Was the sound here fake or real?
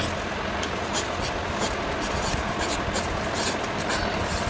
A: real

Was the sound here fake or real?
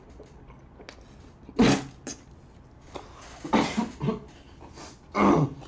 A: real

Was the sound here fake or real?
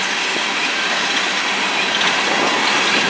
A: real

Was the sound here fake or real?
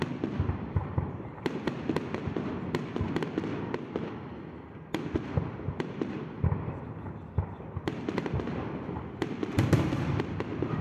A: real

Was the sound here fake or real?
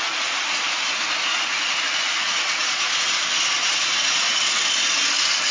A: real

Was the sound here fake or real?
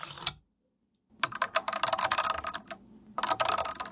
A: real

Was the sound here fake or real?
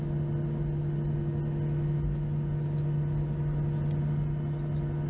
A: real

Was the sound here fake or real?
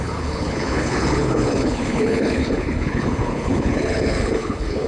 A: fake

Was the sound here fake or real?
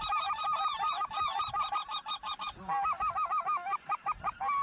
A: real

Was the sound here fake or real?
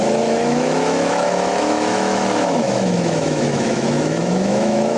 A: fake